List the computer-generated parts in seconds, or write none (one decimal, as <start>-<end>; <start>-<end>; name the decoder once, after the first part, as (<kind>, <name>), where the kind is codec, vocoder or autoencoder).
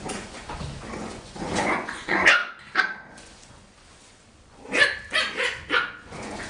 0.0-2.4 (vocoder, Vocos); 3.1-6.5